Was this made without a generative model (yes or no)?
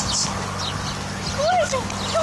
yes